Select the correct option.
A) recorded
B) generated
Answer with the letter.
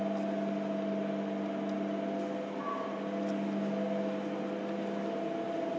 A